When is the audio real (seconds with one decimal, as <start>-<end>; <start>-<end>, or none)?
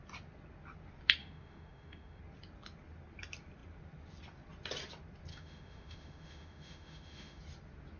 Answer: 0.0-1.2; 2.2-5.3; 7.4-8.0